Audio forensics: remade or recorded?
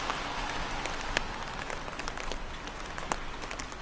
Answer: recorded